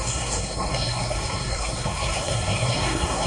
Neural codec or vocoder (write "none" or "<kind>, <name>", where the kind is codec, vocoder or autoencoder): codec, SNAC